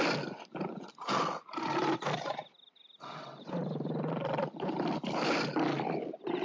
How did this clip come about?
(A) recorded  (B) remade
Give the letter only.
A